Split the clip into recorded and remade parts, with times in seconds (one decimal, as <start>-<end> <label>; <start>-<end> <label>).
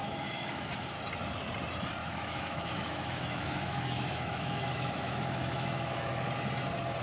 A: 0.0-0.9 remade; 0.9-2.0 recorded; 2.0-6.2 remade; 6.2-7.0 recorded